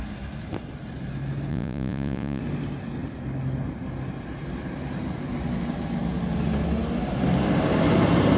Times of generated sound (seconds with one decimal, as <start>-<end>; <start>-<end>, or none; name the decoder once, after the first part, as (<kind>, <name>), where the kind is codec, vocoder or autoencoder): 1.5-2.4 (vocoder, Vocos)